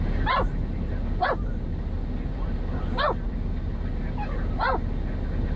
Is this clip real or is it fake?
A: real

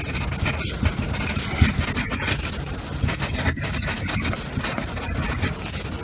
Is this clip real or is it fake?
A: real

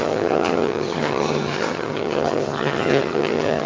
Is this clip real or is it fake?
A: fake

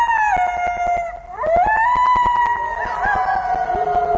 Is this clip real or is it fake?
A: real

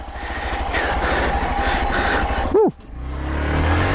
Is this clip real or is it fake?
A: real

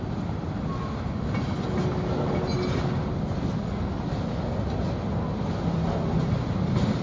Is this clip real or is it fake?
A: real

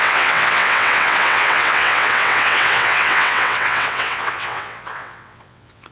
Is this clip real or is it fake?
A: fake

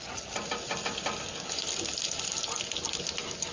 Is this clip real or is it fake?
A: real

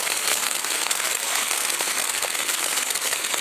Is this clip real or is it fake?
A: fake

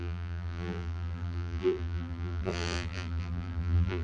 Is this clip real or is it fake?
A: fake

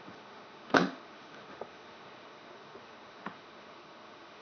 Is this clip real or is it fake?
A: fake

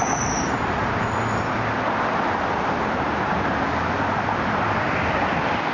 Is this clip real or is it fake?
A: real